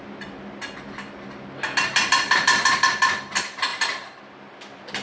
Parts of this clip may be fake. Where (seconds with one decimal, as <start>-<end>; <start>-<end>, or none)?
2.0-2.7; 3.7-4.2